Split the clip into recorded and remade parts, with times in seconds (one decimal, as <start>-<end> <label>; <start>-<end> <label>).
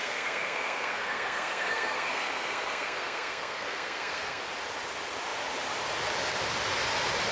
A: 0.0-4.4 remade; 4.4-7.3 recorded